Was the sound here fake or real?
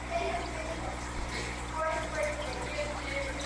real